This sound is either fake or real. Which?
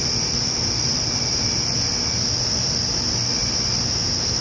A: real